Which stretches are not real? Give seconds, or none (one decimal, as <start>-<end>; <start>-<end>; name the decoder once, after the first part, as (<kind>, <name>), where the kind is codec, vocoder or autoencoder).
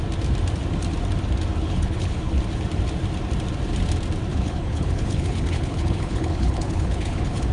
1.6-2.4 (codec, HILCodec); 4.3-7.5